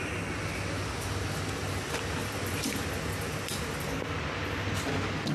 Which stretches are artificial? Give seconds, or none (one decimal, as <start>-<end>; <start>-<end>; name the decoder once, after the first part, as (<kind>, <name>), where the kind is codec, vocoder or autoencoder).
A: 2.2-2.8 (vocoder, BigVGAN v2)